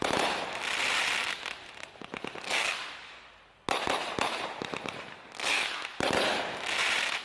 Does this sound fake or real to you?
real